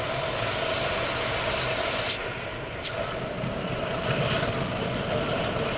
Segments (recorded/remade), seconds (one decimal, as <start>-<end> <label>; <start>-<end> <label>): 0.0-2.2 recorded; 2.2-4.5 remade; 4.5-5.8 recorded